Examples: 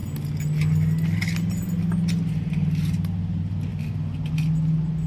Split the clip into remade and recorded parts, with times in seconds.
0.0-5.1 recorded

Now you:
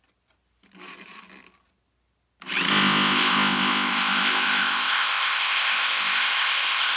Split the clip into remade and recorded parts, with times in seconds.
0.0-2.7 recorded; 2.7-7.0 remade

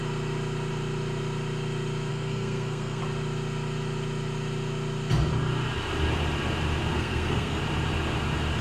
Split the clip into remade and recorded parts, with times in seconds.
0.0-2.1 recorded; 2.1-3.0 remade; 3.0-6.9 recorded; 6.9-7.6 remade; 7.6-8.6 recorded

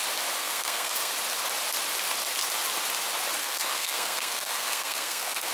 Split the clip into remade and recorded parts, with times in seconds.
0.0-0.4 recorded; 0.4-1.1 remade; 1.1-3.4 recorded; 3.4-5.5 remade